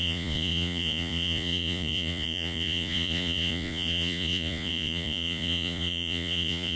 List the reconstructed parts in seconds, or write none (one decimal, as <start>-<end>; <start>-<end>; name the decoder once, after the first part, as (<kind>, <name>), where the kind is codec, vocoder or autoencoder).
0.0-6.8 (vocoder, Vocos)